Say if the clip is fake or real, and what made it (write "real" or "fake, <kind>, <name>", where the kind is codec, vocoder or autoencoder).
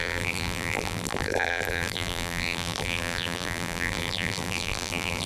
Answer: fake, vocoder, BigVGAN v2